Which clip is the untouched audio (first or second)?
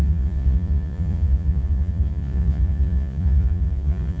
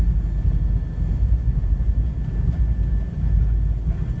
second